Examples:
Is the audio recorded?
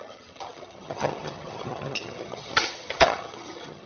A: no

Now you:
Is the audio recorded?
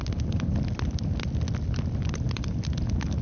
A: yes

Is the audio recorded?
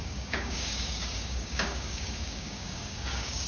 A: no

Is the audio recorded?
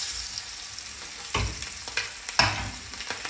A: yes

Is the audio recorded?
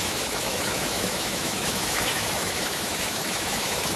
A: no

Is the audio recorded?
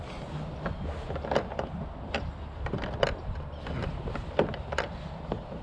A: yes